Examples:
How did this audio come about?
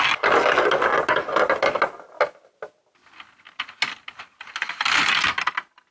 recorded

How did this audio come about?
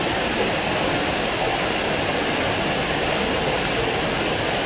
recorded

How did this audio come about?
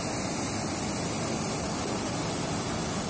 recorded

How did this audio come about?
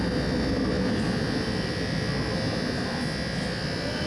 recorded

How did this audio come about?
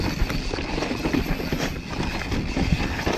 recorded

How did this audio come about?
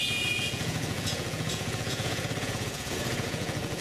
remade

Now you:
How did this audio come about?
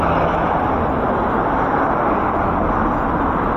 recorded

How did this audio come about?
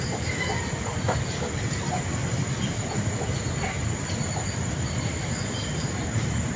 recorded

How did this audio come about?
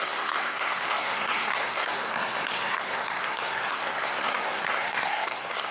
remade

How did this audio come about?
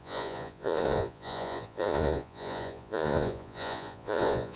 remade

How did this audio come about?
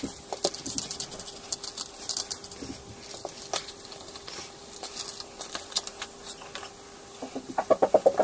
recorded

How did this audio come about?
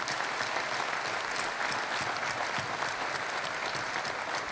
recorded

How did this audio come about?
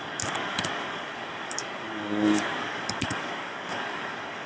remade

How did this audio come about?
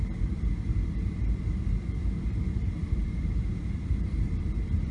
remade